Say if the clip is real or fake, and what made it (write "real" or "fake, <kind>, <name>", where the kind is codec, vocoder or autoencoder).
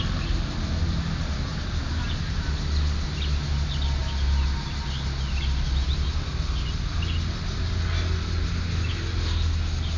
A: real